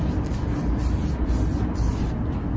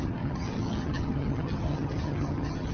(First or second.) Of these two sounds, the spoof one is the second